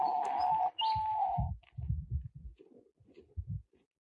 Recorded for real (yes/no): yes